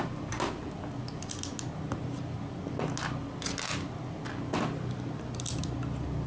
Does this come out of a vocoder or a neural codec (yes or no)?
no